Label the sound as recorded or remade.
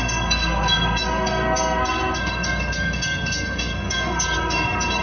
remade